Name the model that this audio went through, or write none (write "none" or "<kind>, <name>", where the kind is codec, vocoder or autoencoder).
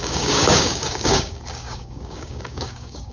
codec, DAC